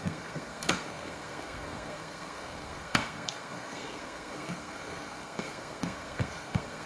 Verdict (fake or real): fake